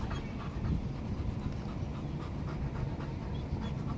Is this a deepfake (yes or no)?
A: no